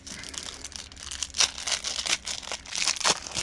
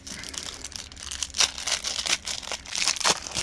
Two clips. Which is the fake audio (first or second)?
second